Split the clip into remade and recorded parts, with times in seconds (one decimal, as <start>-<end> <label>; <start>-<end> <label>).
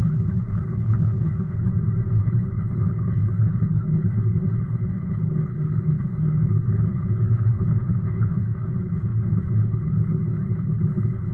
0.0-1.7 remade; 1.7-2.2 recorded; 2.2-11.3 remade